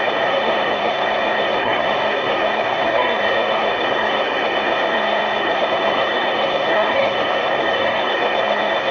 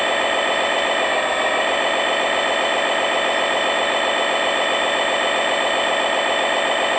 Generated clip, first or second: first